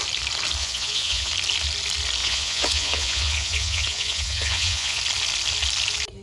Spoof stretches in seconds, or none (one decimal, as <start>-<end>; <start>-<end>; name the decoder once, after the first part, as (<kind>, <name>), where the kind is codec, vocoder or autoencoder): 0.6-1.3 (vocoder, Vocos); 2.2-5.0